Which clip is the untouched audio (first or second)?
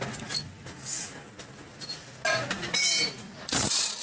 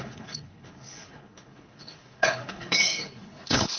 first